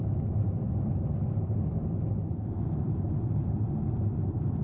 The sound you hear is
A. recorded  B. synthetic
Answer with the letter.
B